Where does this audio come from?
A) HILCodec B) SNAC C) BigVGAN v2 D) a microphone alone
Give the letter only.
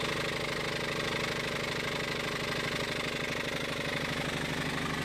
D